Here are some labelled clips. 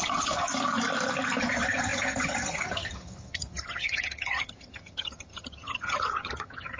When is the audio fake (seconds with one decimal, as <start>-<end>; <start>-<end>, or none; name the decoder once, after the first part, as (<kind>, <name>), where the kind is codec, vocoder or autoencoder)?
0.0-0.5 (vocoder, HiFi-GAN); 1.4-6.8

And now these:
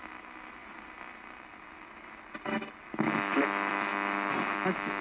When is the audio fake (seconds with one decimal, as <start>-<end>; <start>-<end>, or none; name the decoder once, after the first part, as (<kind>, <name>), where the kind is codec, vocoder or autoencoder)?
none

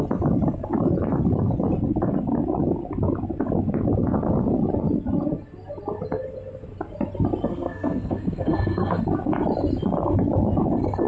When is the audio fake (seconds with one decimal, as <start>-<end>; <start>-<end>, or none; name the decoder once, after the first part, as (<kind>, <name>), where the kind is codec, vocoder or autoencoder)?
7.5-9.0 (codec, SNAC)

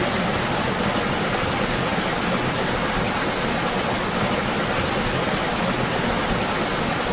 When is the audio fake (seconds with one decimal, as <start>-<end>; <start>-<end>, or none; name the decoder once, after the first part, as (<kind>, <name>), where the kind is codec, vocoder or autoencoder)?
none